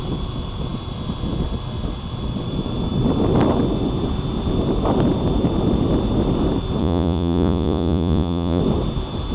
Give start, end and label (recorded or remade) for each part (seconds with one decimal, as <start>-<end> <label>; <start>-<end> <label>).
0.0-6.8 recorded; 6.8-8.6 remade; 8.6-9.3 recorded